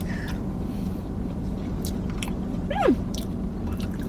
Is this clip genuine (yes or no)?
no